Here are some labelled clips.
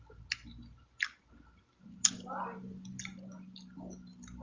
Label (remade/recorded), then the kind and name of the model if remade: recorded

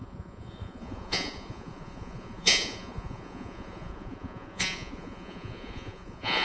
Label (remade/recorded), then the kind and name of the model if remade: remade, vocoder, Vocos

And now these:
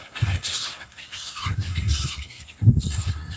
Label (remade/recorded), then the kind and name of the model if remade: remade, codec, SNAC